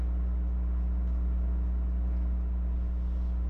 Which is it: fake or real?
real